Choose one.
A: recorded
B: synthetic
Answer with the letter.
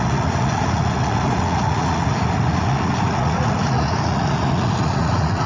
B